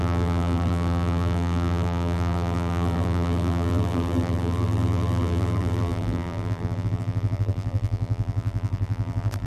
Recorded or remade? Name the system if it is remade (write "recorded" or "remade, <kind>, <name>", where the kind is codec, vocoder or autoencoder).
remade, vocoder, BigVGAN v2